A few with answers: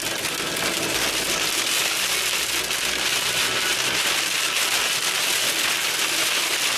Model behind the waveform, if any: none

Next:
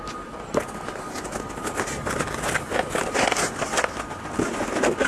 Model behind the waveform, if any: none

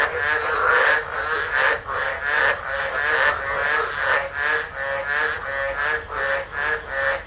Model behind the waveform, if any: none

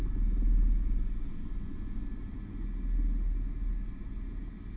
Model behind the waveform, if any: none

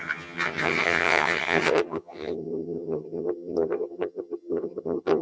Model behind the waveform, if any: vocoder, HiFi-GAN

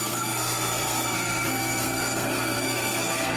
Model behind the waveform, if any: codec, SNAC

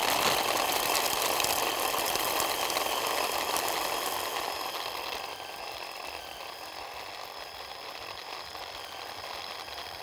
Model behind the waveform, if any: none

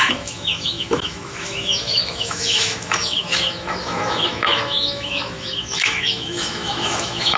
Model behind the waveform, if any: autoencoder, DAC-VAE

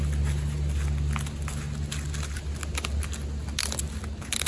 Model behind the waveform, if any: none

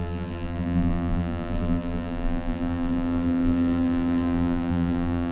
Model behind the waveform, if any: vocoder, BigVGAN v2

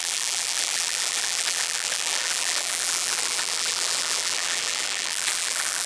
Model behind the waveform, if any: vocoder, BigVGAN v2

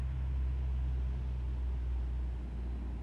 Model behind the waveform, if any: none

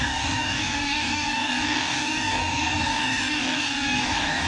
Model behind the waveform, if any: codec, DAC